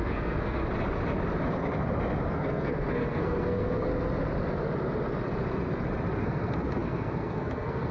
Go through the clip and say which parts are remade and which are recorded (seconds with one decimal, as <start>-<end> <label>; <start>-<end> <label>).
0.0-0.6 remade; 0.6-2.3 recorded; 2.3-3.9 remade; 3.9-6.2 recorded; 6.2-7.9 remade